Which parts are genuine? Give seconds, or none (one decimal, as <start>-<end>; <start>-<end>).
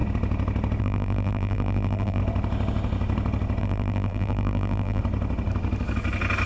0.0-0.8; 2.2-3.6; 5.0-6.5